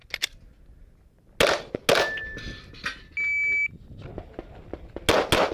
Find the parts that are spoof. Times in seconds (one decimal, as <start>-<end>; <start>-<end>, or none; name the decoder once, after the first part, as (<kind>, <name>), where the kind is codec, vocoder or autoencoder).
none